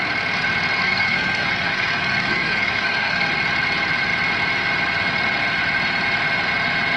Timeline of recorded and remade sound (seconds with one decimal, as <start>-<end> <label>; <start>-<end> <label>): 0.0-0.8 recorded; 0.8-3.3 remade; 3.3-7.0 recorded